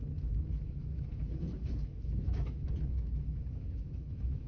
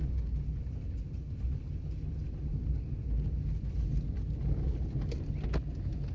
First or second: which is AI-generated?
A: first